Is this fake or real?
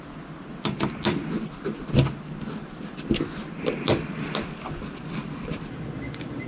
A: real